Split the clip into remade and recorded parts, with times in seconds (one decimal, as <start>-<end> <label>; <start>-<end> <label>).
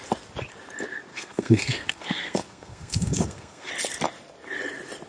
0.0-1.1 recorded; 1.1-3.7 remade; 3.7-5.1 recorded